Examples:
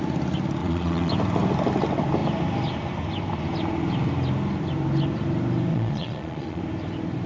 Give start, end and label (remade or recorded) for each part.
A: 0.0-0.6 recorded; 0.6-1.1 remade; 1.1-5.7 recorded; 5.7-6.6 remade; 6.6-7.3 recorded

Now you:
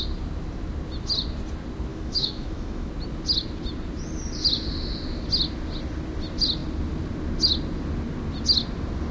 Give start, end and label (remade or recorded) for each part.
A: 0.0-1.9 recorded; 1.9-2.9 remade; 2.9-9.1 recorded